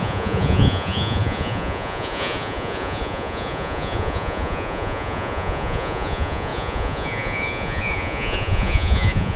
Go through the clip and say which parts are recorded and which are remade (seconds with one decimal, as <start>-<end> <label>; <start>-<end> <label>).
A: 0.0-9.4 remade